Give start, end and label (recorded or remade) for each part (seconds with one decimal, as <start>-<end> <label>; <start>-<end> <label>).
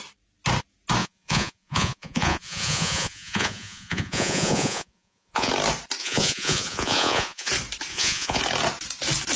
0.0-1.0 recorded; 1.0-5.5 remade; 5.5-6.0 recorded; 6.0-7.5 remade; 7.5-7.9 recorded; 7.9-8.4 remade; 8.4-9.4 recorded